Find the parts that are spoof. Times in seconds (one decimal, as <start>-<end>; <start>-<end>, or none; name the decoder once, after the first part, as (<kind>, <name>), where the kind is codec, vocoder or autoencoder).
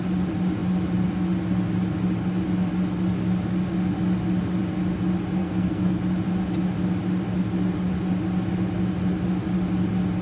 5.4-6.0 (codec, SNAC)